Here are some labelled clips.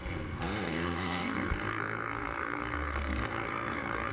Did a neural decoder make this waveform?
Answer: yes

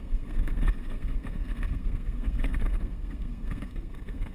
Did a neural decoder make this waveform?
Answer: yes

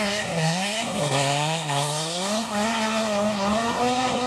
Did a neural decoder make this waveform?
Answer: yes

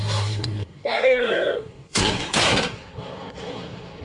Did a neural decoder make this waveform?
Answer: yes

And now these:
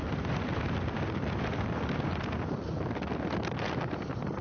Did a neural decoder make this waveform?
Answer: no